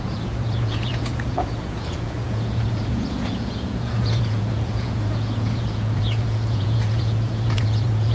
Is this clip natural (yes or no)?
no